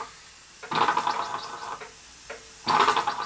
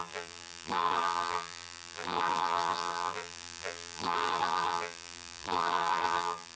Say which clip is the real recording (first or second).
first